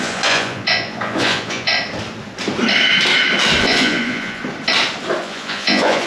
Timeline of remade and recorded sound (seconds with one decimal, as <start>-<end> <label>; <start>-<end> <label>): 0.0-1.7 remade; 1.7-3.6 recorded; 3.6-4.4 remade; 4.4-5.2 recorded; 5.2-6.1 remade